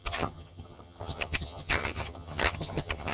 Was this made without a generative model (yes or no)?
no